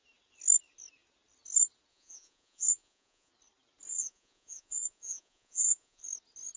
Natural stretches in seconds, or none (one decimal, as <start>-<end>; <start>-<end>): 0.0-1.9; 3.3-3.9; 6.0-6.6

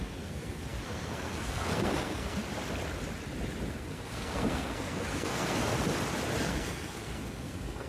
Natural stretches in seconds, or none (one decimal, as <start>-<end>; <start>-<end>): 2.4-3.7; 5.6-6.4

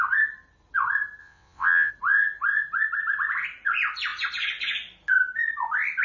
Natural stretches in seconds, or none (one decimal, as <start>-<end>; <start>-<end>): 0.0-1.2; 1.9-6.0

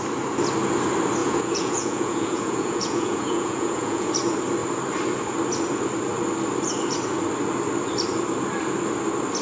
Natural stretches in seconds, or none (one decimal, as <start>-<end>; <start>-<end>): 0.0-1.2; 4.1-9.4

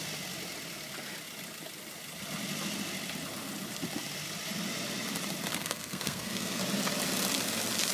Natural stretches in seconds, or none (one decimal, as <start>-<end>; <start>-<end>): 0.0-5.5; 6.6-7.9

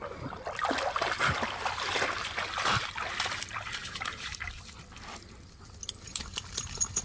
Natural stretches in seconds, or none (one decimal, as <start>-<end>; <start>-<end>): 0.0-3.8; 4.6-6.1

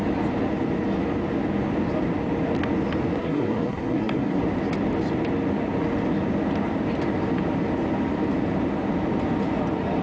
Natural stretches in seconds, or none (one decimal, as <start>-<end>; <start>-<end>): 0.0-3.2; 4.4-10.0

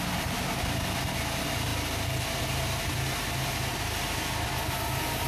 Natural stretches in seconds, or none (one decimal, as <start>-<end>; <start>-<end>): 0.0-5.3